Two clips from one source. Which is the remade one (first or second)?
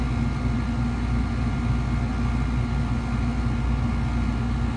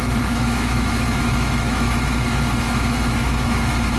second